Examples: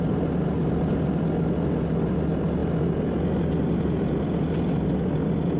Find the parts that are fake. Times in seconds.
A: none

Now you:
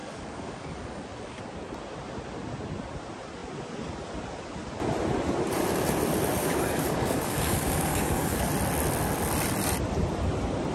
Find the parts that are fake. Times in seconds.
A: 0.0-1.4 (codec, DAC); 6.4-8.5